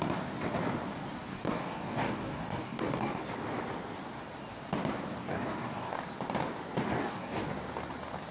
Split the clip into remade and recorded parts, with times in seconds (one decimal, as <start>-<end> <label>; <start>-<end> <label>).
0.0-1.3 recorded; 1.3-3.2 remade; 3.2-5.2 recorded; 5.2-5.9 remade; 5.9-6.9 recorded; 6.9-7.4 remade; 7.4-8.3 recorded